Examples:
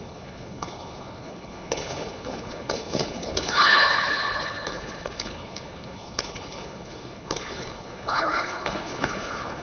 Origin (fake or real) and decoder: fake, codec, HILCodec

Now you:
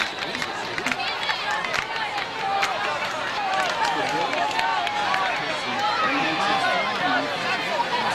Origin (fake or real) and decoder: real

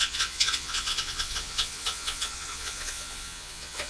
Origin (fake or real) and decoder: fake, vocoder, Vocos